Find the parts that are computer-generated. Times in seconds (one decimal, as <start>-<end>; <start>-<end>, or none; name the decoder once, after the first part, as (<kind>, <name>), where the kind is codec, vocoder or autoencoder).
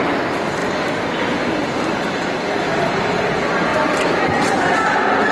none